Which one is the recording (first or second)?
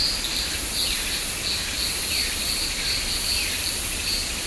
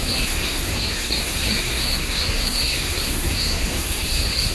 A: first